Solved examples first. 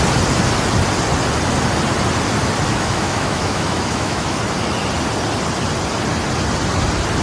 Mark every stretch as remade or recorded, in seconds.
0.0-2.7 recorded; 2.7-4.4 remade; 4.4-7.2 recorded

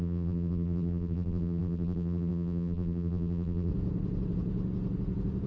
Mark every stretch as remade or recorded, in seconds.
0.0-3.7 remade; 3.7-5.5 recorded

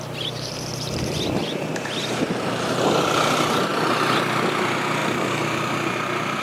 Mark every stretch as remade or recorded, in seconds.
0.0-1.4 recorded; 1.4-2.7 remade; 2.7-5.0 recorded; 5.0-6.4 remade

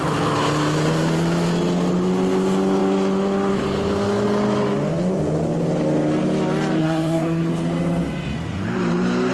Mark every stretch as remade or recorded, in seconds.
0.0-6.8 recorded; 6.8-7.5 remade; 7.5-9.3 recorded

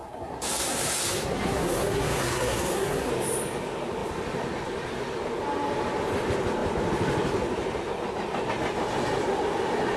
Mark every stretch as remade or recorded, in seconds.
0.0-3.1 remade; 3.1-10.0 recorded

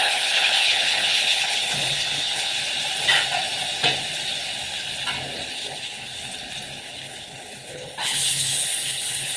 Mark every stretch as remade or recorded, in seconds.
0.0-2.5 remade; 2.5-5.5 recorded; 5.5-6.2 remade; 6.2-6.8 recorded; 6.8-9.4 remade

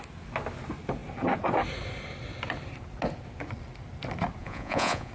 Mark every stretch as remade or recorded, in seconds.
0.0-4.4 recorded; 4.4-5.1 remade